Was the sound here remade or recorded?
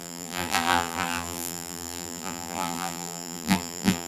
remade